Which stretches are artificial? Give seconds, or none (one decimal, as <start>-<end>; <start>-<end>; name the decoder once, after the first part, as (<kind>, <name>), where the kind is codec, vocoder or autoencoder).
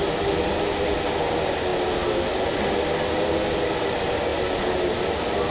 none